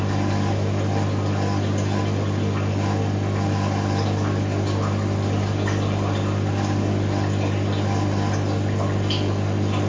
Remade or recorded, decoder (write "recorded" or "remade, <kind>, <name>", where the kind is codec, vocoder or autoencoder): recorded